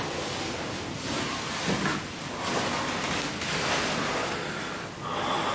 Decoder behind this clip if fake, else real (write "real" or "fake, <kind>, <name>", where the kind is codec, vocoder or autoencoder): real